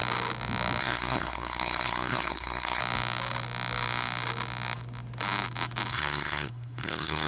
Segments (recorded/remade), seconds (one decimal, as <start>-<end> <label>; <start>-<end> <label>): 0.0-0.8 recorded; 0.8-2.8 remade; 2.8-5.9 recorded; 5.9-7.3 remade